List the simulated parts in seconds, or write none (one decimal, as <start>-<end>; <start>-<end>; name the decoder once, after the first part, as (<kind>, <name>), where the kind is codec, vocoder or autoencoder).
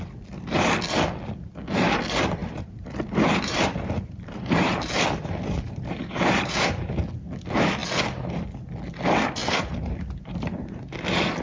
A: 2.4-6.7 (vocoder, BigVGAN v2); 9.4-10.8